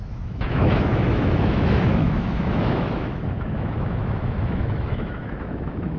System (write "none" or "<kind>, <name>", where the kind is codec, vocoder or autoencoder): autoencoder, DAC-VAE